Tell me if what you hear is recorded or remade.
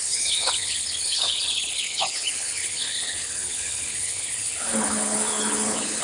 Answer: remade